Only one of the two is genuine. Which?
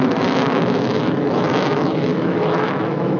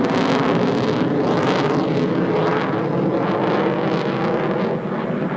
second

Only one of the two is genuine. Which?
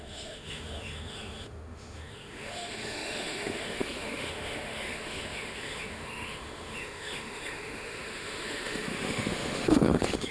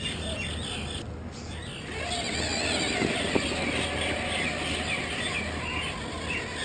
second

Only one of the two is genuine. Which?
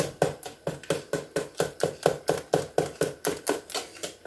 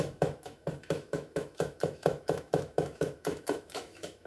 first